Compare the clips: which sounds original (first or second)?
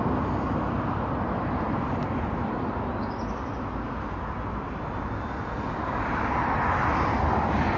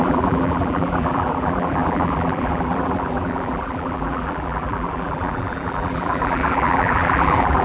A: first